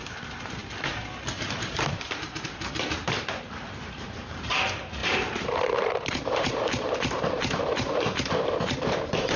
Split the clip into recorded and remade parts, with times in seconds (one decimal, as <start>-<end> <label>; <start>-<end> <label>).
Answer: 0.0-0.6 remade; 0.6-1.6 recorded; 1.6-9.4 remade